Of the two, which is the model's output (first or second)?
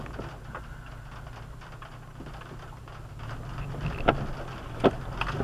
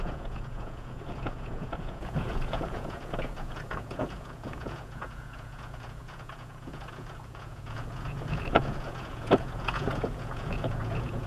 second